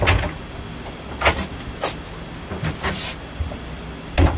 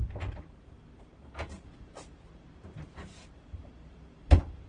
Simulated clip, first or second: second